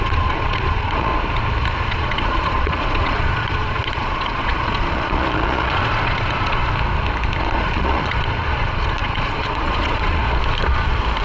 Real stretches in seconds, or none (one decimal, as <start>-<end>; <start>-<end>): 1.1-1.9; 6.6-7.4; 10.2-11.2